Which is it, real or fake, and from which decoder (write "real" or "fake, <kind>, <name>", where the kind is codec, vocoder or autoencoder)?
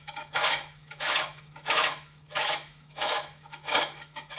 fake, autoencoder, DAC-VAE